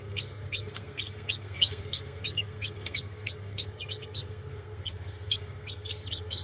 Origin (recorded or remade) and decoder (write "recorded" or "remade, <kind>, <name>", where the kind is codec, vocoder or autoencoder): remade, codec, SNAC